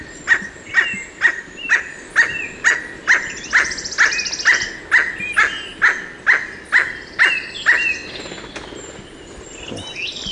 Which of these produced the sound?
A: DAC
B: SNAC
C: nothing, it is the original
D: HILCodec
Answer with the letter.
C